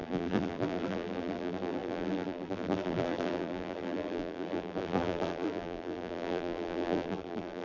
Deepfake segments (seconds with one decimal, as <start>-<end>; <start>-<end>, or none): 0.0-7.6